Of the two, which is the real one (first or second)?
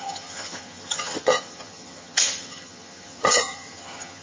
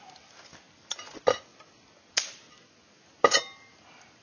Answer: second